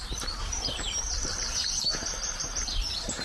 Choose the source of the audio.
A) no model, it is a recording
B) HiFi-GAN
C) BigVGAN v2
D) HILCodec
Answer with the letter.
C